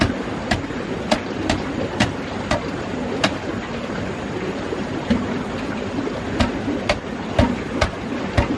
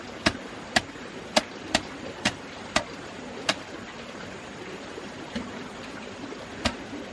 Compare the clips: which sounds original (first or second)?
first